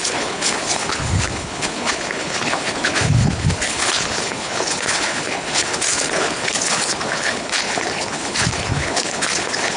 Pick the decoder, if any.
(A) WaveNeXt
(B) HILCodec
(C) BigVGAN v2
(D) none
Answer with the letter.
B